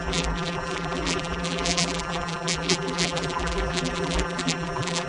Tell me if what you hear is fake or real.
fake